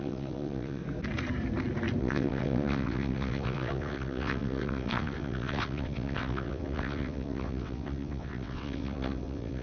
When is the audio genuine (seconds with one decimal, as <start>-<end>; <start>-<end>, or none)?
0.8-2.0